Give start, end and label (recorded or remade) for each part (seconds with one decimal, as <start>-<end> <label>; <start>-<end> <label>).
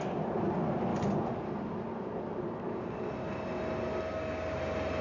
0.0-5.0 recorded